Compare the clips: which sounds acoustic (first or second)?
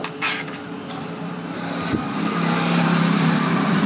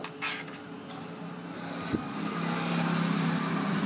second